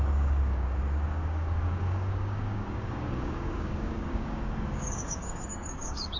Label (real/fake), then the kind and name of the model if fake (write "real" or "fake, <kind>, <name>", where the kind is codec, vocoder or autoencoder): fake, codec, DAC